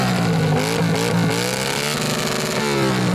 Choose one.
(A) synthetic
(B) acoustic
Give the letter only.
B